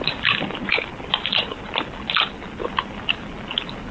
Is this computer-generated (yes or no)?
no